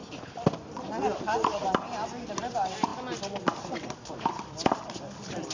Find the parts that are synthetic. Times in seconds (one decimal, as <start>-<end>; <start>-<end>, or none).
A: none